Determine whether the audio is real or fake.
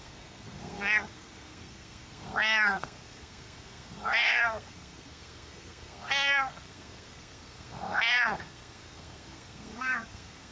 fake